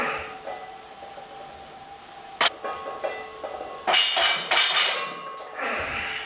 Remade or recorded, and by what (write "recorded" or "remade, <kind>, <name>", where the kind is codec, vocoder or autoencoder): recorded